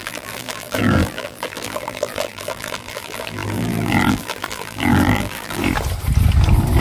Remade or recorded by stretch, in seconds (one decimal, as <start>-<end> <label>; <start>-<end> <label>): 0.0-5.6 remade; 5.6-6.8 recorded